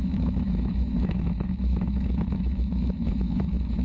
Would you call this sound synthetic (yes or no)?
yes